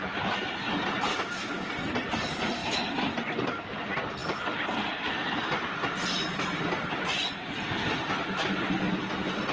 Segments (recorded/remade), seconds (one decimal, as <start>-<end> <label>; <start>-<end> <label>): 0.0-1.1 recorded; 1.1-1.7 remade; 1.7-9.5 recorded